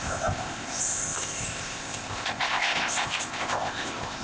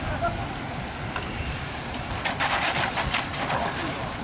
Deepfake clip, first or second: first